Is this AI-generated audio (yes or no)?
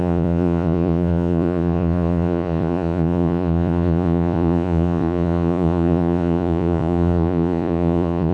yes